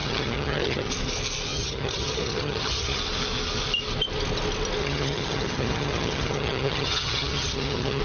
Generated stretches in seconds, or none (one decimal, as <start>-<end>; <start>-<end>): 0.0-0.9; 1.5-3.0; 4.8-8.0